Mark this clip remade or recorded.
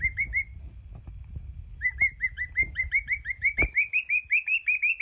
recorded